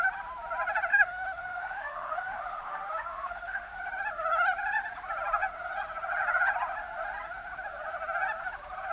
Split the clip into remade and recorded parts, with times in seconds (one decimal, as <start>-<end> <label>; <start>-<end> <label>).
0.0-0.9 recorded; 0.9-3.8 remade; 3.8-8.9 recorded